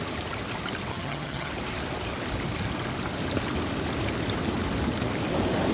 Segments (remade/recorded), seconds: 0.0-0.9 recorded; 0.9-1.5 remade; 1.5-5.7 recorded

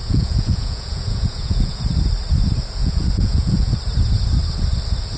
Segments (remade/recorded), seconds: 0.0-1.8 remade; 1.8-2.8 recorded; 2.8-3.7 remade; 3.7-5.2 recorded

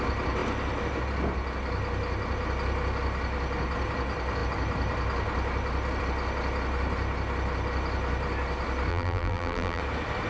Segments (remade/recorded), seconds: 0.0-8.9 recorded; 8.9-9.8 remade; 9.8-10.3 recorded